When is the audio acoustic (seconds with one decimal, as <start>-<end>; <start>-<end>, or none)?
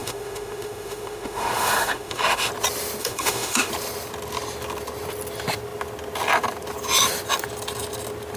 2.5-3.0; 3.7-8.4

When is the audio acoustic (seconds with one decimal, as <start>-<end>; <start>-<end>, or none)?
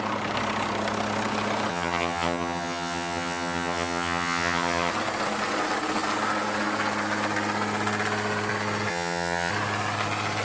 0.0-1.7; 4.9-8.9; 9.5-10.4